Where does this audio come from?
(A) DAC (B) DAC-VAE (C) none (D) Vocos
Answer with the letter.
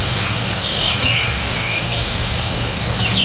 A